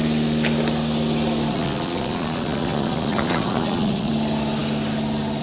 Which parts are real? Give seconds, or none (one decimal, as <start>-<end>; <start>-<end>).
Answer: 0.0-1.5; 4.1-5.4